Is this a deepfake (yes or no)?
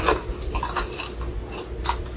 no